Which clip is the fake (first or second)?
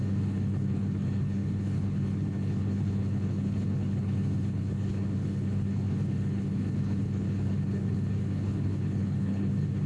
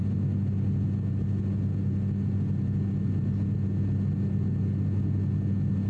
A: first